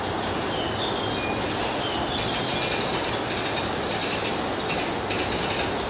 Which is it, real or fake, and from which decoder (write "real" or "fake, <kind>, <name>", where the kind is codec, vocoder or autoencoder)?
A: real